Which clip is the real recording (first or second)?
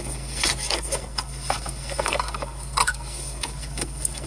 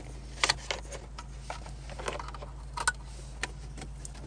second